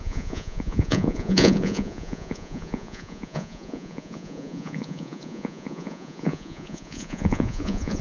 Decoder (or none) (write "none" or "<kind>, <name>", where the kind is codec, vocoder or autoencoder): vocoder, Vocos